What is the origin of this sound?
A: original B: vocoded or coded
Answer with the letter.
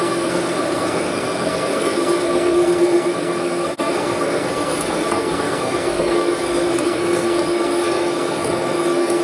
B